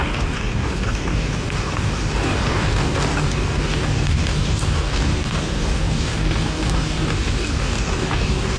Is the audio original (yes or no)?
no